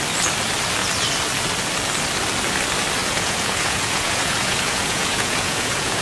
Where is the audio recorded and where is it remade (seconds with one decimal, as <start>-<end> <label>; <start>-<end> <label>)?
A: 0.0-3.0 recorded; 3.0-6.0 remade